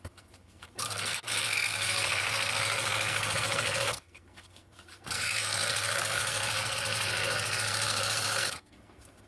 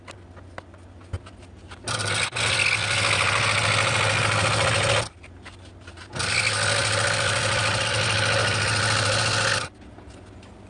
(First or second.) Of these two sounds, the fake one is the first